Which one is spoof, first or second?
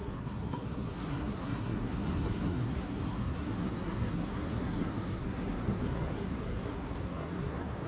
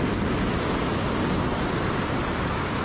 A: first